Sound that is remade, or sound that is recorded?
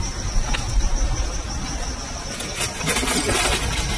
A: recorded